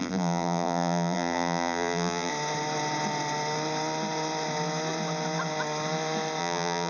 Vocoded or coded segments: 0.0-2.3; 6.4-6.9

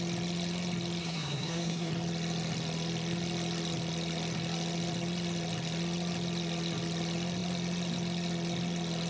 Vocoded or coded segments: 1.0-1.9

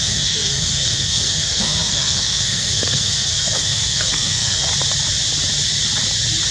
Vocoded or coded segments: 0.0-4.7

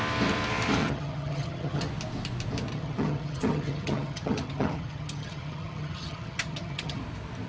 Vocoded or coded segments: 0.8-1.9; 2.7-7.0

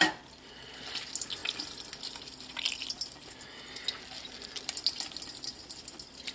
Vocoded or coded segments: none

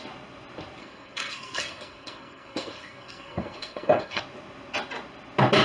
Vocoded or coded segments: 0.8-4.2